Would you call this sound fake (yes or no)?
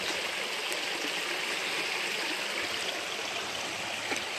no